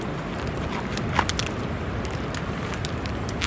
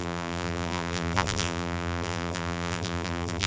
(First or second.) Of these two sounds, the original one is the first